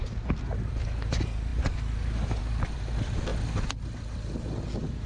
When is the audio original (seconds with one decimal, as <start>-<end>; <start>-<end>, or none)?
0.0-5.1

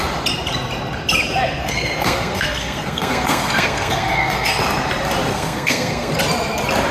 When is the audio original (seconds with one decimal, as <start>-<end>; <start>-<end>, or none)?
0.0-1.6; 4.6-5.3; 6.1-6.9

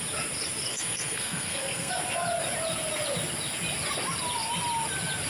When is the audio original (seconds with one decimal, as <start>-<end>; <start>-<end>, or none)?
0.0-0.7; 1.9-5.3

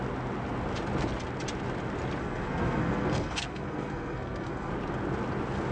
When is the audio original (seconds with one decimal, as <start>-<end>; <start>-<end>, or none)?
0.0-2.2; 4.7-5.7

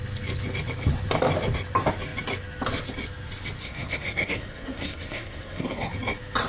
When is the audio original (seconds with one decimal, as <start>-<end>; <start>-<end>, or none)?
0.0-3.6; 5.9-6.5

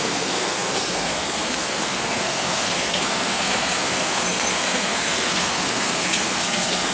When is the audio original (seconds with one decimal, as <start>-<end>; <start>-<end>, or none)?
none

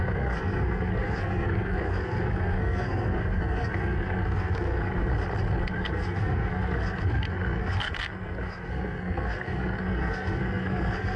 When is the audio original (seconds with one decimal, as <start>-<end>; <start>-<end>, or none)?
5.1-5.6

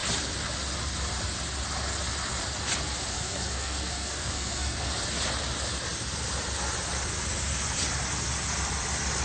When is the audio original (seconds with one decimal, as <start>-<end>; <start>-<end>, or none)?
0.0-3.1; 4.9-9.2